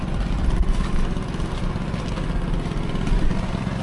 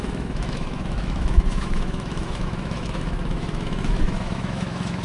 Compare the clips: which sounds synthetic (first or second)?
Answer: second